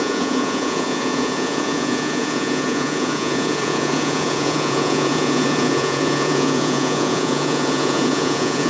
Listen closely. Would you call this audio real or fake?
fake